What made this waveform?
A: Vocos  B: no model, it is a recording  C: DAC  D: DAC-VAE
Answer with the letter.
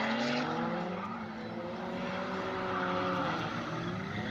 B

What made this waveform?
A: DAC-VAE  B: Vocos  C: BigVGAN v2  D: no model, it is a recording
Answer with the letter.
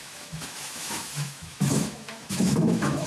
A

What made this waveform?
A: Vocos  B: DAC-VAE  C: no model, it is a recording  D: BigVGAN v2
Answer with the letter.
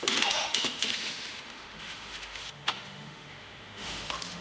B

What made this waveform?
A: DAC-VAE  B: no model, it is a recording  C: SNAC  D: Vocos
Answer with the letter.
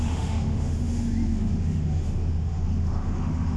A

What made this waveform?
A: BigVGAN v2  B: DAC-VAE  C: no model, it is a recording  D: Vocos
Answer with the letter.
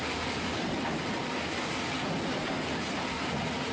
C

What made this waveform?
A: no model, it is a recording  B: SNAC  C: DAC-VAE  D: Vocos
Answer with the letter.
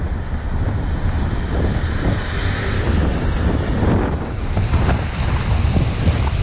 A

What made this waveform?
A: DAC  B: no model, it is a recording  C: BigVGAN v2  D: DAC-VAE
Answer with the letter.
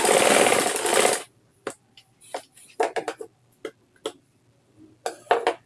B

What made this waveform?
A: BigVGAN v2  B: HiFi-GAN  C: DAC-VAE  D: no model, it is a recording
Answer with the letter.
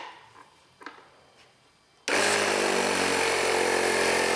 D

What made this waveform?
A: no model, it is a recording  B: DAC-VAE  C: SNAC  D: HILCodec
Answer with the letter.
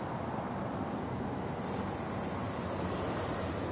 A